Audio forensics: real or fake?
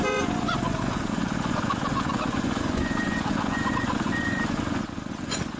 fake